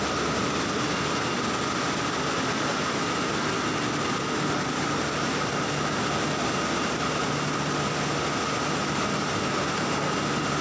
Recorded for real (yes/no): yes